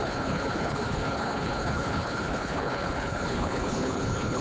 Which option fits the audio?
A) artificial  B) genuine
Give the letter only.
A